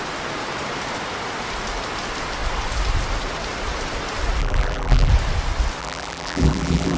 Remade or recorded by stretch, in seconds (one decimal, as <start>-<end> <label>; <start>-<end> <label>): 0.0-4.4 recorded; 4.4-5.1 remade; 5.1-5.8 recorded; 5.8-7.0 remade